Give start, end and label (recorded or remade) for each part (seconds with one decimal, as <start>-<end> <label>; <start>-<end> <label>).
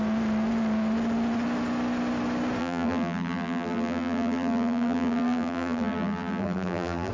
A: 0.0-2.6 recorded; 2.6-7.1 remade